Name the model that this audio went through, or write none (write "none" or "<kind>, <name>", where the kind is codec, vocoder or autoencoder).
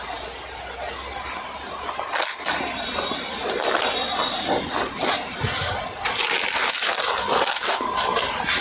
none